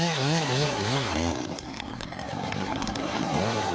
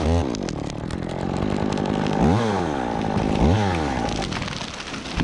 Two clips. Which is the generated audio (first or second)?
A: first